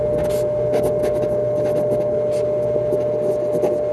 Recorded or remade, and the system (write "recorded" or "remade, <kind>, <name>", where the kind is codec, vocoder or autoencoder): recorded